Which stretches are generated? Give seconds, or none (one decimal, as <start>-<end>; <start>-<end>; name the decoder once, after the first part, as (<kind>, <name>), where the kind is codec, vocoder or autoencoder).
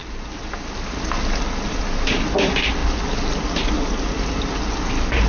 none